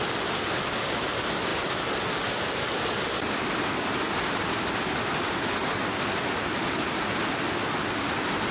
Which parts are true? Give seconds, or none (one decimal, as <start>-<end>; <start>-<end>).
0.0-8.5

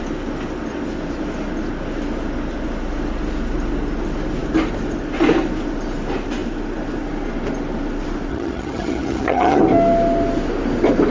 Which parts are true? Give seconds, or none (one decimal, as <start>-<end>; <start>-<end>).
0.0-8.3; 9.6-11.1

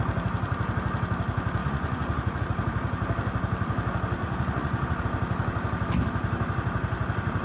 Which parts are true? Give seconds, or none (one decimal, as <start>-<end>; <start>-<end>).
0.0-1.6; 2.4-4.2; 5.0-7.4

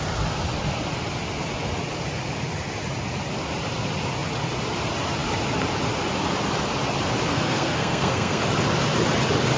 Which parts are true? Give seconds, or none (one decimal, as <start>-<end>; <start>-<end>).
0.0-7.3; 8.4-9.6

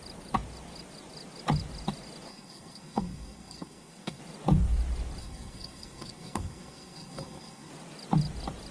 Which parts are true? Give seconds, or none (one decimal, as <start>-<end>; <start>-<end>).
0.0-2.3; 4.2-5.2; 7.7-8.7

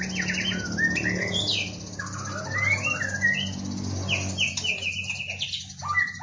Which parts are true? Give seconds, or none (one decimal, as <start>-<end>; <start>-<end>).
0.0-6.2